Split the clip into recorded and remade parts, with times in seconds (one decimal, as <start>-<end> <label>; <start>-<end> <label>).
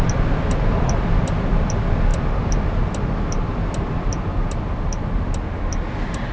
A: 0.0-6.3 recorded